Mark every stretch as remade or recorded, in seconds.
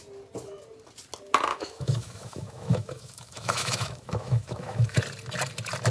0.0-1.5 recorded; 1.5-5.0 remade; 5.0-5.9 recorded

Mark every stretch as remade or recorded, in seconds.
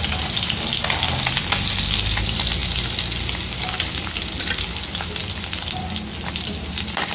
0.0-7.1 recorded